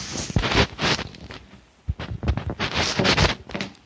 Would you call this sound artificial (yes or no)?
no